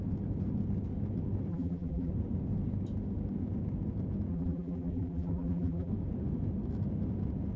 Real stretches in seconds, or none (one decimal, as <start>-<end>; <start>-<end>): 0.0-1.5; 2.1-4.3; 5.9-7.6